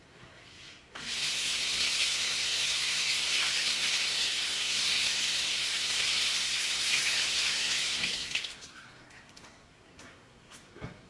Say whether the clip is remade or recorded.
remade